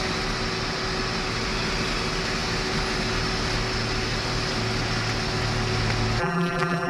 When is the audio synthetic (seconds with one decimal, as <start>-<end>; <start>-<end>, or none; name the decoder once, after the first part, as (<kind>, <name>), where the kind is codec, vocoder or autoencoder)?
6.2-6.9 (vocoder, BigVGAN v2)